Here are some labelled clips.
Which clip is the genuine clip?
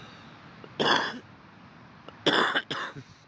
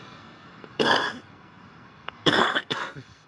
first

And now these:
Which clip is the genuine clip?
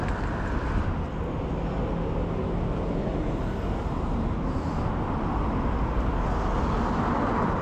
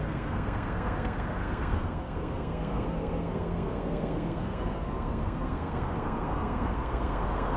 first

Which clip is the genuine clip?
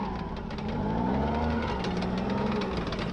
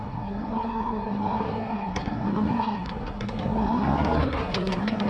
first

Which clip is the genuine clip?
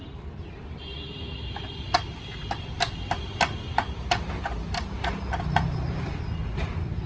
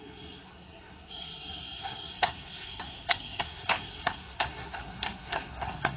first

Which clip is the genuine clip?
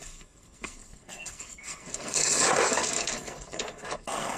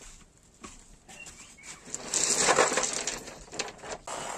second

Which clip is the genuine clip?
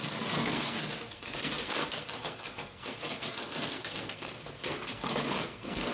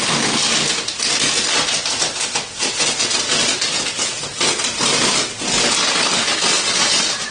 second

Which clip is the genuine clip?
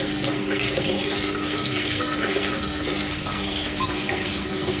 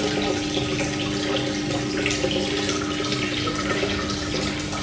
second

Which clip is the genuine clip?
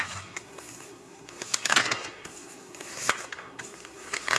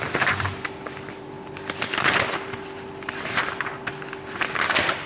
second